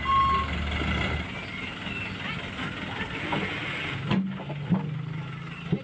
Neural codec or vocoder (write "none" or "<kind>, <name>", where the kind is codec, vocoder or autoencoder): none